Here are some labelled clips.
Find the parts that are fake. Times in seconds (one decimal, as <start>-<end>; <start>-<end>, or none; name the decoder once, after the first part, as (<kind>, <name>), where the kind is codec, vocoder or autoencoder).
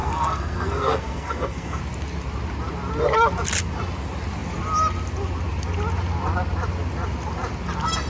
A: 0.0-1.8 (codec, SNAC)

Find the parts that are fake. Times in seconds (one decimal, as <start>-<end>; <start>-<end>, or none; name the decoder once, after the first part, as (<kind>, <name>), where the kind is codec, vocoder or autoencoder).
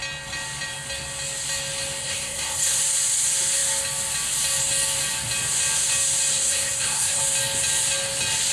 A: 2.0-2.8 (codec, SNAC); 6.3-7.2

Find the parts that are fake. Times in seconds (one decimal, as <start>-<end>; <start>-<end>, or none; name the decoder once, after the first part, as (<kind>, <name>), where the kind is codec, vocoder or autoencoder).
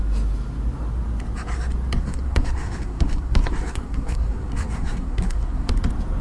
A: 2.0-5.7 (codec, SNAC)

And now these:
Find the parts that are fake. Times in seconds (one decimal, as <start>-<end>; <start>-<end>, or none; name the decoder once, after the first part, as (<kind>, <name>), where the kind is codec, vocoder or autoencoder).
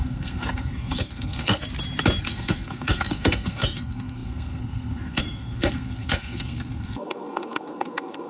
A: 0.0-1.6 (codec, SNAC); 2.2-8.3